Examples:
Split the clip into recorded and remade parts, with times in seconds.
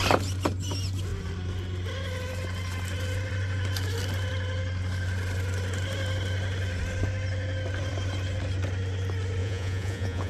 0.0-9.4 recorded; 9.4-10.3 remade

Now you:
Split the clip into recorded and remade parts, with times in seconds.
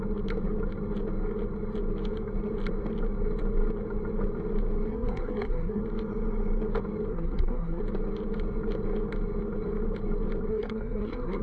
0.0-4.9 recorded; 4.9-5.8 remade; 5.8-7.1 recorded; 7.1-7.8 remade; 7.8-10.5 recorded; 10.5-11.4 remade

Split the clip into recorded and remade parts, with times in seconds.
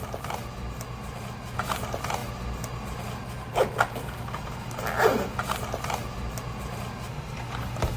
0.0-8.0 recorded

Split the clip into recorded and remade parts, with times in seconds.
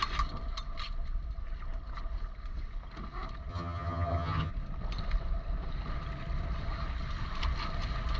0.0-3.5 recorded; 3.5-4.5 remade; 4.5-8.2 recorded